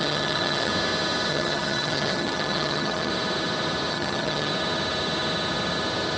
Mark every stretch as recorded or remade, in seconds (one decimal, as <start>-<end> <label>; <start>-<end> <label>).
0.0-0.7 remade; 0.7-1.3 recorded; 1.3-3.1 remade; 3.1-3.9 recorded; 3.9-4.5 remade; 4.5-6.2 recorded